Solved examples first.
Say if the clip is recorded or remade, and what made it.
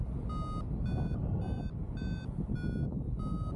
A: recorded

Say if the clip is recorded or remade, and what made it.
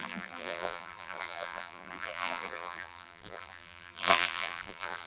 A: remade, vocoder, BigVGAN v2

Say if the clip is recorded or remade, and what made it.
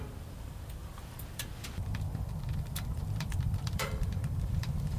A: remade, vocoder, BigVGAN v2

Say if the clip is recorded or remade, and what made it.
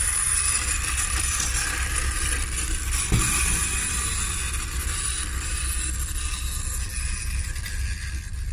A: recorded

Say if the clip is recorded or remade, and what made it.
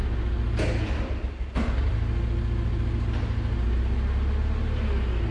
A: recorded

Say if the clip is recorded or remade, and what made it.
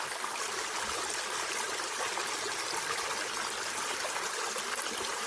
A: recorded